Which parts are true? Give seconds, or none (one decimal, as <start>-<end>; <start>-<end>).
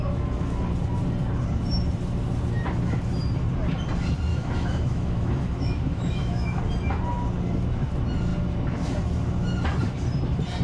0.0-4.3; 6.6-10.6